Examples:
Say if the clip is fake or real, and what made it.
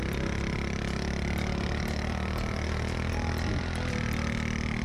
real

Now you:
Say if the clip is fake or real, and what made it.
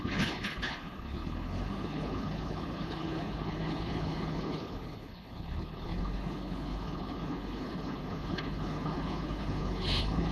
fake, codec, HILCodec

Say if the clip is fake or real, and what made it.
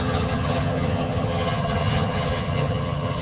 fake, vocoder, HiFi-GAN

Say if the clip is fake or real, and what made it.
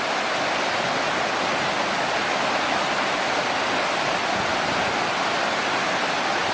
real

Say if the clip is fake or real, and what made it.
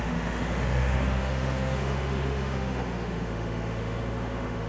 fake, autoencoder, DAC-VAE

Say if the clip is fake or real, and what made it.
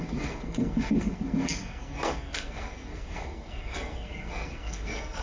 fake, codec, SNAC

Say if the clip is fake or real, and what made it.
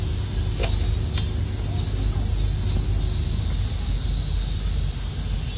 real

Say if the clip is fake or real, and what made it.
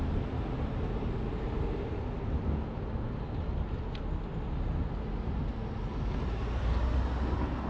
real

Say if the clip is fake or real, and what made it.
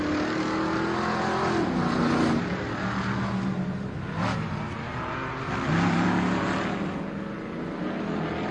real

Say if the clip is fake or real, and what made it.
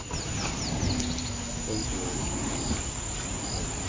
real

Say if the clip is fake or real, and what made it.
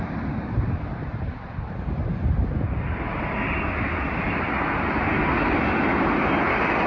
fake, vocoder, BigVGAN v2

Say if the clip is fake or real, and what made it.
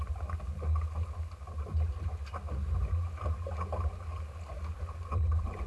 real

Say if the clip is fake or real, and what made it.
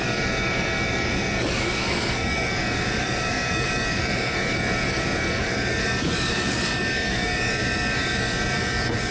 fake, codec, DAC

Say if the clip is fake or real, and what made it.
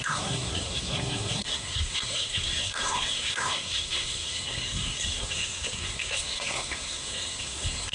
fake, codec, SNAC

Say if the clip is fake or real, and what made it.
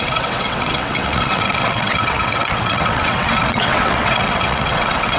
fake, vocoder, WaveNeXt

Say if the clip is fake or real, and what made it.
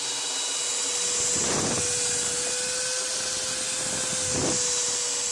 real